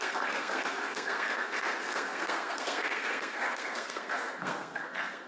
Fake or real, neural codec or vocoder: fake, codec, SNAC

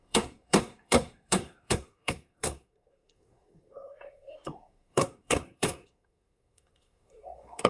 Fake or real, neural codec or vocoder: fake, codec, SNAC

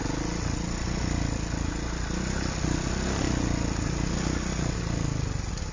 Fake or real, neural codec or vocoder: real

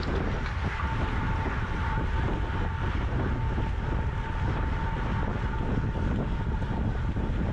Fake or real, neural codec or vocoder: real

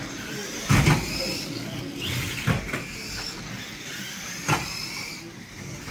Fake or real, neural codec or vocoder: real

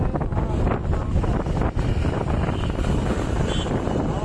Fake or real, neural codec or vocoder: real